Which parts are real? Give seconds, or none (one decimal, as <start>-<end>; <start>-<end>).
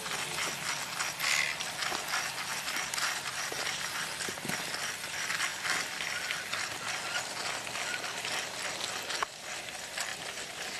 0.0-2.5; 4.1-10.1